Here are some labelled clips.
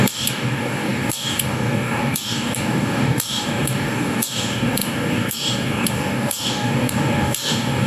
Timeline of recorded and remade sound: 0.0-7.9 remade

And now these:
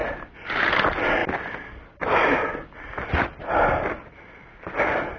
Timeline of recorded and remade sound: 0.0-5.2 recorded